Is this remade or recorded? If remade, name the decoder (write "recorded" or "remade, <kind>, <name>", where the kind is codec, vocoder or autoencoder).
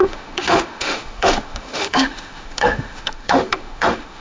remade, autoencoder, DAC-VAE